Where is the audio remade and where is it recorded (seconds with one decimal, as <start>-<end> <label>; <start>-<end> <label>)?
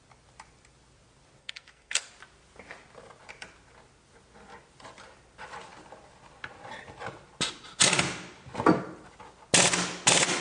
0.0-1.4 recorded; 1.4-2.1 remade; 2.1-10.4 recorded